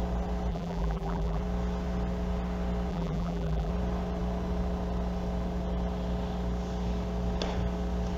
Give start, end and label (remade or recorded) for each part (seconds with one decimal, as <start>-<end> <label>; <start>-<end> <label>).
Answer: 0.0-0.5 recorded; 0.5-1.4 remade; 1.4-2.9 recorded; 2.9-3.7 remade; 3.7-8.2 recorded